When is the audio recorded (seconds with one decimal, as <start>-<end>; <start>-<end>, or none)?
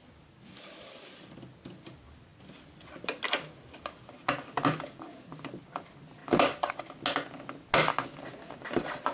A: 0.0-9.1